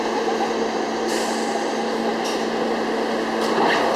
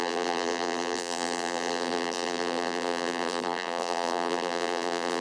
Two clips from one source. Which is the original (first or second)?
first